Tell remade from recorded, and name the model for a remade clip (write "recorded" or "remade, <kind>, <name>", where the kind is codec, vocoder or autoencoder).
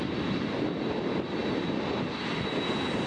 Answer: recorded